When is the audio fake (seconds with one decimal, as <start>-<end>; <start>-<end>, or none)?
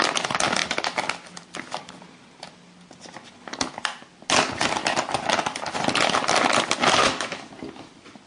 7.0-7.5